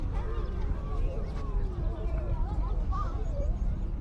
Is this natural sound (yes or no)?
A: no